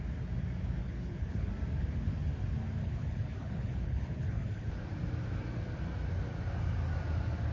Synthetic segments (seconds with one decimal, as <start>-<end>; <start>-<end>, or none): 0.8-1.5; 2.8-4.7